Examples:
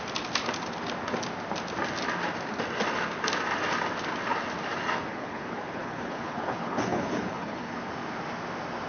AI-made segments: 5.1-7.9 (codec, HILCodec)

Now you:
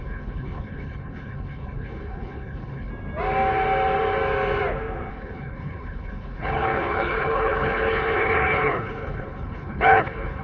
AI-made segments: 0.0-2.9 (codec, HILCodec); 5.1-10.4

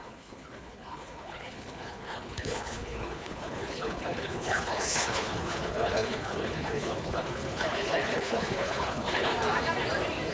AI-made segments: 0.0-9.3 (codec, HILCodec)